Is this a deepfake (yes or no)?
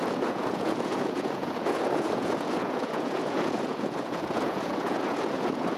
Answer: yes